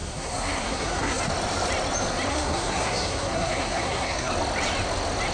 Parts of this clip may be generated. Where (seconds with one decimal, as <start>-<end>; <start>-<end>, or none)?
0.0-1.2; 2.3-4.3